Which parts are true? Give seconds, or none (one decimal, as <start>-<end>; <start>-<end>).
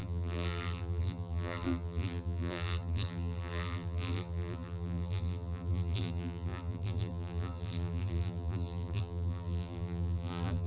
none